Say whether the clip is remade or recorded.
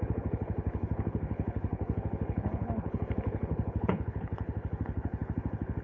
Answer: remade